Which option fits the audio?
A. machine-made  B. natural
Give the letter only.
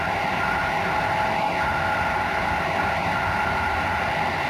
B